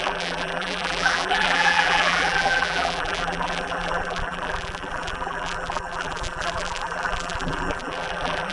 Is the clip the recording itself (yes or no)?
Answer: no